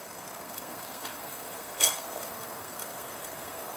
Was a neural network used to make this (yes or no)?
yes